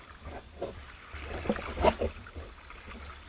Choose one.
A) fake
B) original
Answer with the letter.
B